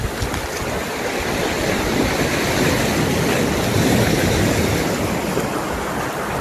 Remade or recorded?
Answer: recorded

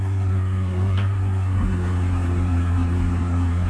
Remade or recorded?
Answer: remade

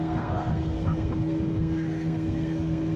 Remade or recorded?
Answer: remade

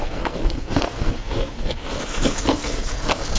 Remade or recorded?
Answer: remade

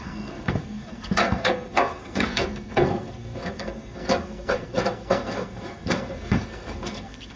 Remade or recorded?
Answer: remade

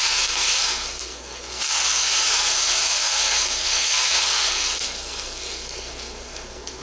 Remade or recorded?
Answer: remade